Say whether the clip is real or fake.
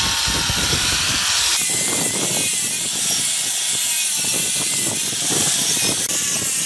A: fake